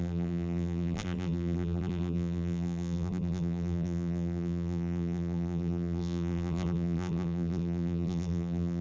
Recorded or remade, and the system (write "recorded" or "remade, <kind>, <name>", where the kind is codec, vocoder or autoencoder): remade, vocoder, BigVGAN v2